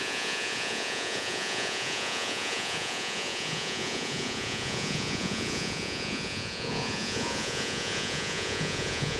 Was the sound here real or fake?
fake